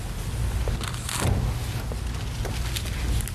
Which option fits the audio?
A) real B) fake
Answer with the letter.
A